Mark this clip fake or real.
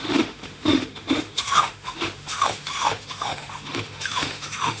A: fake